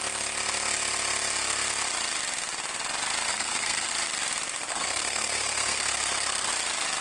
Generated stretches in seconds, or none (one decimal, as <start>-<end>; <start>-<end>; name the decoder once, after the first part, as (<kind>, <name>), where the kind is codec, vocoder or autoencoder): 3.3-3.9 (codec, SNAC); 4.7-6.5

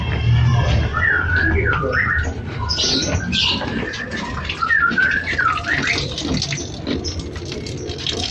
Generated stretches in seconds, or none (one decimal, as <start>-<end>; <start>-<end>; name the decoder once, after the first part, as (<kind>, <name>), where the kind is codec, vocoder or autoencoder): none

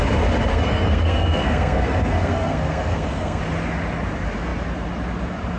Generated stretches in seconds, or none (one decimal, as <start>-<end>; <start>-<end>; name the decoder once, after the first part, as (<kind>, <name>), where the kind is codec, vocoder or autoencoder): 0.5-3.4 (codec, SNAC)

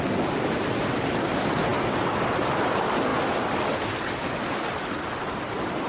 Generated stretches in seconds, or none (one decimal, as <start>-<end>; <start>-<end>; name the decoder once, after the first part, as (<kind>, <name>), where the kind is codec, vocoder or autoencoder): none

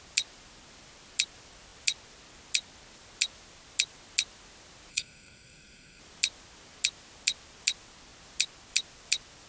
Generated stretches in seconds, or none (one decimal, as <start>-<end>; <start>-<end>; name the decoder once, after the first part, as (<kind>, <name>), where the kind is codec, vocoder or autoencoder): 4.9-6.0 (codec, SNAC)

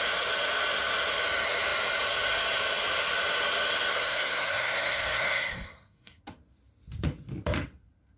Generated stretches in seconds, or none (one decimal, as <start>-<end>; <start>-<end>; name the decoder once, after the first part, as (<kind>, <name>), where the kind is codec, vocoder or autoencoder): 4.0-6.2 (codec, SNAC)

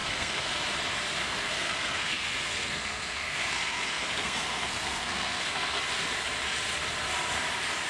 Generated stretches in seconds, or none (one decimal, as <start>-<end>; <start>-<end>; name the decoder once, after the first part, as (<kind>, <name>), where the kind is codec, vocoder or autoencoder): 0.0-0.5 (codec, SNAC); 1.2-5.8

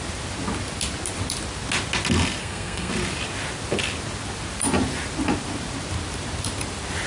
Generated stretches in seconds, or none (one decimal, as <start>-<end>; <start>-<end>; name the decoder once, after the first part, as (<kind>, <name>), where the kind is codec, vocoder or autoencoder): 2.4-2.9 (codec, SNAC)